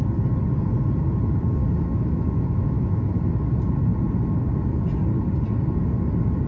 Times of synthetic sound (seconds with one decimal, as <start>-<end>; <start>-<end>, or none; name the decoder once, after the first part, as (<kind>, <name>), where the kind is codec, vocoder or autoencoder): 1.6-3.2 (autoencoder, DAC-VAE)